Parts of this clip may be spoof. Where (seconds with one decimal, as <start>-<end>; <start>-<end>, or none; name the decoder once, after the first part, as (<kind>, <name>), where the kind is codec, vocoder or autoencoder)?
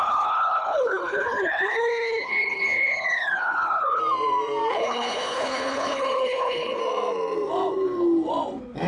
0.0-4.0 (codec, HILCodec); 4.7-6.8